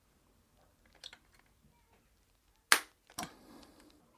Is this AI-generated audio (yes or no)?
no